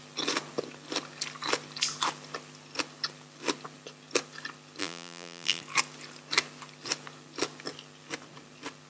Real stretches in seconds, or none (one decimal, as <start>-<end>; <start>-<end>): 0.0-4.8; 5.6-8.9